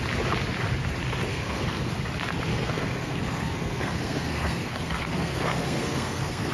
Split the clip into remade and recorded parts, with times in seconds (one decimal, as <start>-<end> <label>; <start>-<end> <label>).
0.0-1.3 recorded; 1.3-1.9 remade; 1.9-2.5 recorded; 2.5-6.5 remade